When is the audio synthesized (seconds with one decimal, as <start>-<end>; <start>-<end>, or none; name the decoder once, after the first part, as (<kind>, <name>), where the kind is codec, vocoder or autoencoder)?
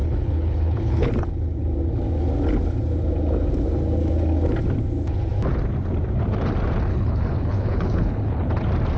0.0-1.1 (codec, HILCodec); 6.9-8.5